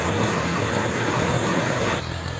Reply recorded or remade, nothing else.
remade